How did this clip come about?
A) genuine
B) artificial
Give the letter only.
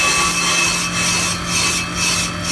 A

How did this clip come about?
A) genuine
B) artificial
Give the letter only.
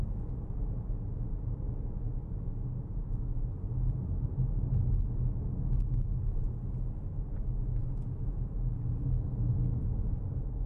A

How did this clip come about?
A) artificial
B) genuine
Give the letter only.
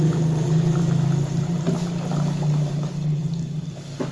B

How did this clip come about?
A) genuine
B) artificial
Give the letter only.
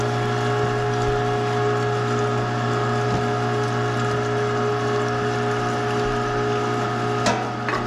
A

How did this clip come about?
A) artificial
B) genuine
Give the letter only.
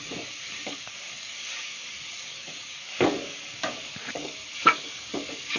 A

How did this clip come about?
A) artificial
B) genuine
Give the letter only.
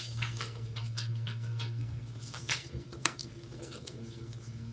A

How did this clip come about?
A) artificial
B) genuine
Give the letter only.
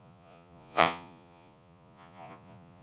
A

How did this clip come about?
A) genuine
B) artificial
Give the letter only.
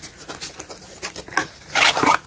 A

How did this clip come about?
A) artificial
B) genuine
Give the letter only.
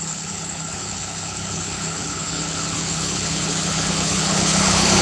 A